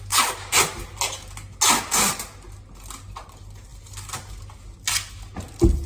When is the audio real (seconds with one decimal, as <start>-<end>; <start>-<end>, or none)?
0.0-5.9